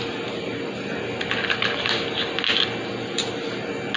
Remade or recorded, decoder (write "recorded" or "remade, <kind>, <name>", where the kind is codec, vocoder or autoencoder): recorded